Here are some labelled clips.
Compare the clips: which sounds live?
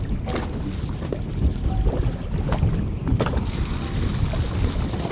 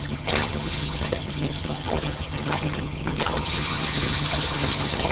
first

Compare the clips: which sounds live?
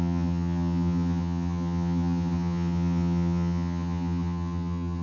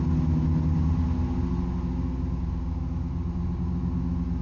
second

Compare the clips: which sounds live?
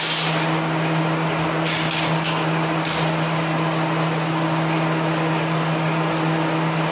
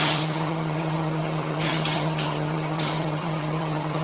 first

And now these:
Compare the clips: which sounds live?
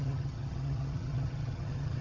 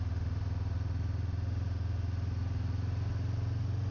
second